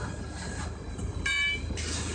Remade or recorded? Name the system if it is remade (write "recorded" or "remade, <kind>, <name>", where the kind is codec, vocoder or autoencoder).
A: recorded